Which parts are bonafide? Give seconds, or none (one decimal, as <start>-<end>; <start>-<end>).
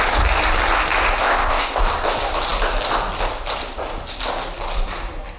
0.0-1.2; 1.8-5.4